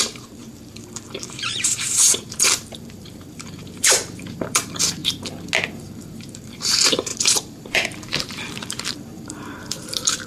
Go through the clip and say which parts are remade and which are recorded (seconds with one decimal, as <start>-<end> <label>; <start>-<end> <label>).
0.0-5.0 remade; 5.0-5.7 recorded; 5.7-10.3 remade